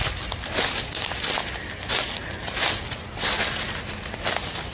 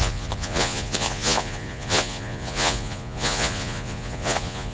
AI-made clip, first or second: second